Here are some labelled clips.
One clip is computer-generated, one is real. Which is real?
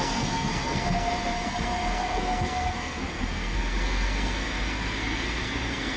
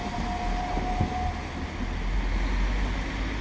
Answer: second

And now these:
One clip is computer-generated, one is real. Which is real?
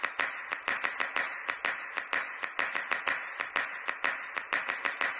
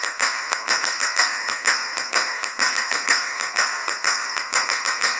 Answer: first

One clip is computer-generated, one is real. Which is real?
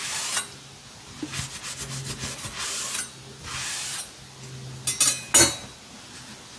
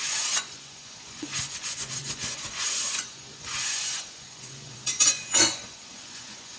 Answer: first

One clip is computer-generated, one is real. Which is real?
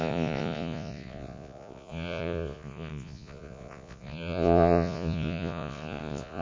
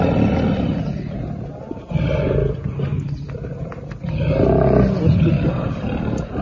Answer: second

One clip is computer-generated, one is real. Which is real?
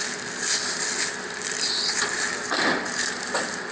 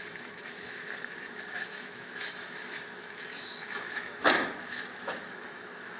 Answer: first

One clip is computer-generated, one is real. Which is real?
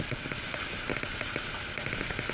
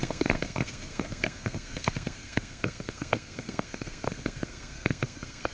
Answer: first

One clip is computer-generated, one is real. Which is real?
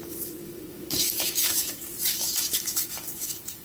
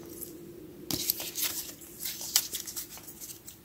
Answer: second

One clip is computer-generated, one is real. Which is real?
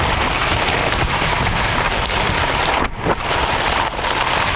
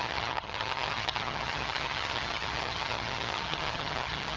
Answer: first